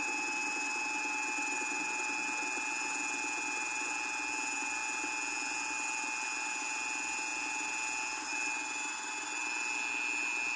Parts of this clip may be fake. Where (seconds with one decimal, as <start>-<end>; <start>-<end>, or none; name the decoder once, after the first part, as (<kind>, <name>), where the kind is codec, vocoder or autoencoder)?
none